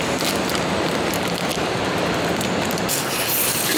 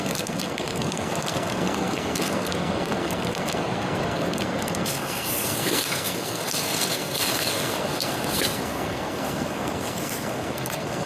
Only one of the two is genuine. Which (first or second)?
first